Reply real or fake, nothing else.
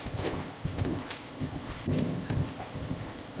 fake